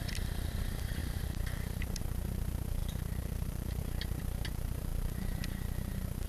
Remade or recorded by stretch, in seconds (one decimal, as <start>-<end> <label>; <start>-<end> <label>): 0.0-1.0 recorded; 1.0-2.0 remade; 2.0-2.8 recorded; 2.8-3.8 remade; 3.8-6.3 recorded